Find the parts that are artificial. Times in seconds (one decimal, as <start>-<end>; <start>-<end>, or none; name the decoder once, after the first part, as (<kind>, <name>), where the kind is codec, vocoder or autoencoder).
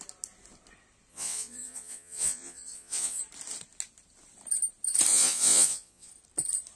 1.1-3.2 (vocoder, Vocos); 5.1-6.1